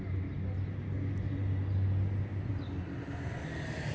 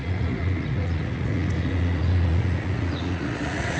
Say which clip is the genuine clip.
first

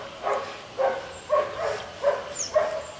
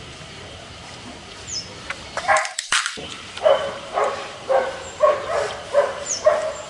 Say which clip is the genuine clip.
first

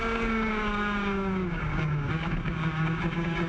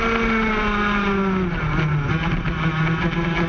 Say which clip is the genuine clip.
second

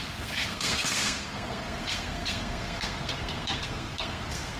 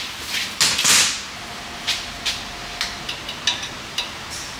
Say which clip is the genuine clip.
second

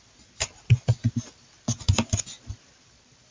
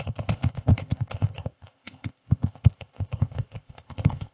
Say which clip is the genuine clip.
first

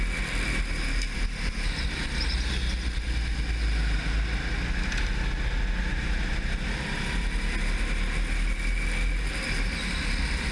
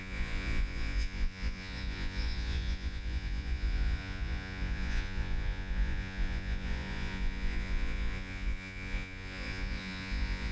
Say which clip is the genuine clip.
first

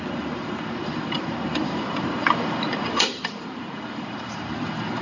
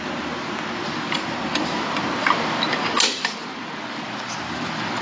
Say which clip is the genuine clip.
second